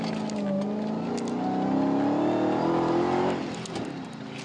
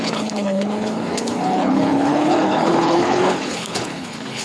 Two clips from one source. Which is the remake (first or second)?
second